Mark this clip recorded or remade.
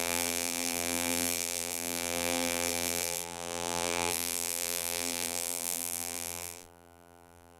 remade